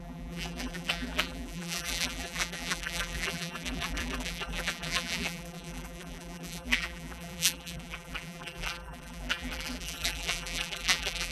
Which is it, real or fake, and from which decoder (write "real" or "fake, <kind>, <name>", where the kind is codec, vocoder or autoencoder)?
fake, vocoder, BigVGAN v2